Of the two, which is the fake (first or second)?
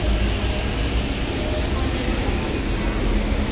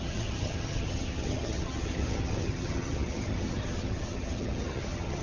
second